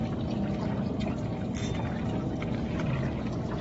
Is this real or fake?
real